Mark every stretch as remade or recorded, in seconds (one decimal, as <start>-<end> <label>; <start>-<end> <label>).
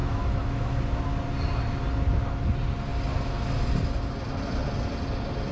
0.0-0.8 remade; 0.8-5.5 recorded